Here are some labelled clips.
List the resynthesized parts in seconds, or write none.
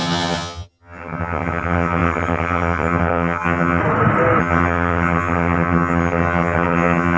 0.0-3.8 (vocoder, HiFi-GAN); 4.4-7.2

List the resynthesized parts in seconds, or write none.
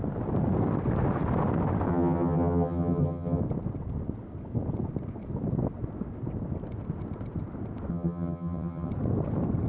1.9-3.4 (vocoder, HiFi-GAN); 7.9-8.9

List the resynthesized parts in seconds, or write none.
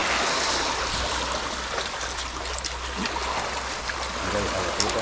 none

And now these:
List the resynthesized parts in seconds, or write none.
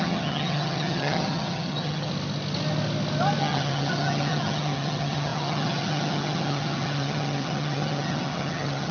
0.0-2.1 (vocoder, HiFi-GAN); 3.4-8.9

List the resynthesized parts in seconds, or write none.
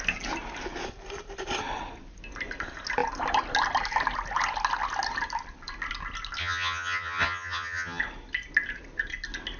6.4-8.0 (vocoder, HiFi-GAN)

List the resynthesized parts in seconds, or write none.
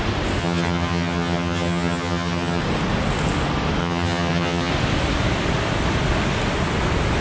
0.4-2.6 (vocoder, HiFi-GAN); 3.8-4.7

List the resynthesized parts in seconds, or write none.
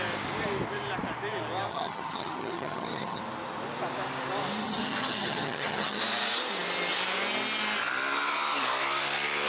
1.7-3.2 (vocoder, HiFi-GAN); 4.6-6.0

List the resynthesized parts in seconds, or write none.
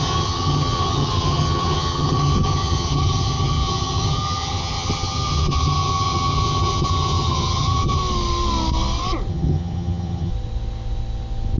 0.0-8.0 (vocoder, HiFi-GAN); 9.3-10.3